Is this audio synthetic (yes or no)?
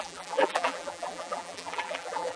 yes